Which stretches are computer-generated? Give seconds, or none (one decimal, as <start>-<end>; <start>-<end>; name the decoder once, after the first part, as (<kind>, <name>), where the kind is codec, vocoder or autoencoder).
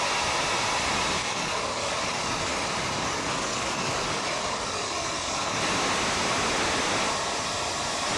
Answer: 1.2-5.6 (codec, DAC)